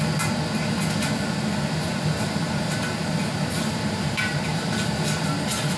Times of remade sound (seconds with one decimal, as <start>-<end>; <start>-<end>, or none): 1.9-5.8